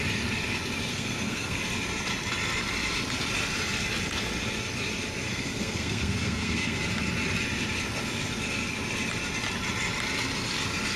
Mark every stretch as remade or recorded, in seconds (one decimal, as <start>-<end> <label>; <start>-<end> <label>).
0.0-0.9 recorded; 0.9-1.6 remade; 1.6-5.3 recorded; 5.3-6.8 remade; 6.8-11.0 recorded